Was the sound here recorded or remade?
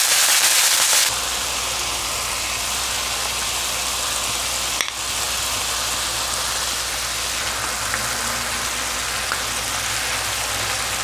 recorded